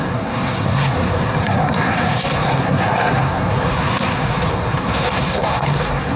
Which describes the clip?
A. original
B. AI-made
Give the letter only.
B